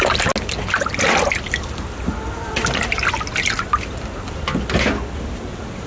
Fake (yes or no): no